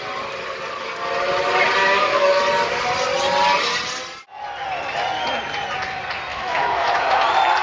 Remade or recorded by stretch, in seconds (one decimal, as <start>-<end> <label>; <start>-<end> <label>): 0.0-1.8 recorded; 1.8-2.4 remade; 2.4-6.3 recorded; 6.3-7.0 remade; 7.0-7.6 recorded